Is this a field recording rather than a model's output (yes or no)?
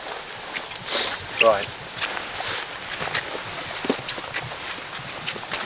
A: yes